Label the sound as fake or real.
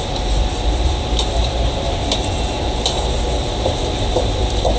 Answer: fake